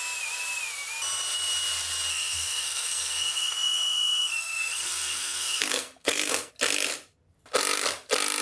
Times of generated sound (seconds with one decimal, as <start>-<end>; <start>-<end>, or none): 2.1-6.5